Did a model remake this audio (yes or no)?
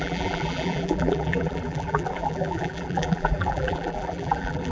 yes